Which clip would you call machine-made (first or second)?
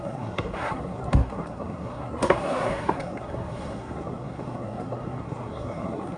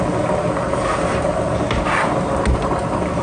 first